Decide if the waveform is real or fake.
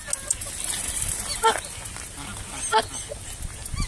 real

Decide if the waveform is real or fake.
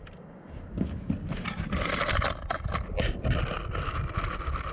real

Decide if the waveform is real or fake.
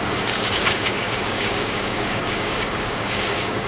fake